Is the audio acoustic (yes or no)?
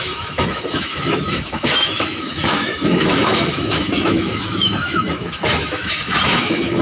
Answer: no